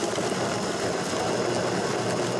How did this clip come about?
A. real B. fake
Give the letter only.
A